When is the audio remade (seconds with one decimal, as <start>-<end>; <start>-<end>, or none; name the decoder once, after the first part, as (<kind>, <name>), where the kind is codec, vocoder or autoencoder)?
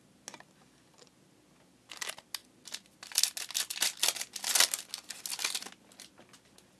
none